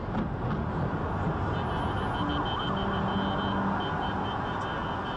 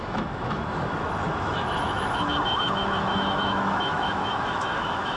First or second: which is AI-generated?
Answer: second